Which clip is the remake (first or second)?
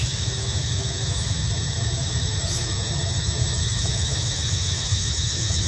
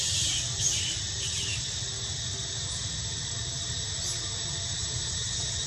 first